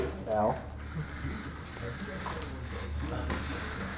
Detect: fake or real real